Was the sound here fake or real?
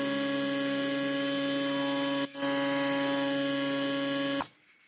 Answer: real